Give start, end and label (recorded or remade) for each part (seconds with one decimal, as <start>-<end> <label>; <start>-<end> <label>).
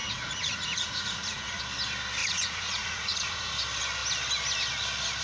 0.0-1.6 remade; 1.6-2.2 recorded; 2.2-3.5 remade; 3.5-5.2 recorded